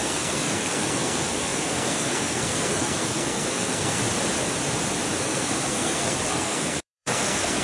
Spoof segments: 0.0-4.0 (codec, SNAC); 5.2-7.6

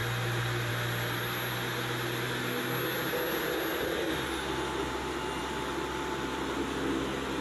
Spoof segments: none

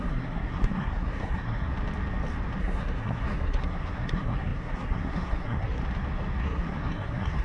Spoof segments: 0.0-1.7 (codec, SNAC); 2.6-5.8; 6.4-7.4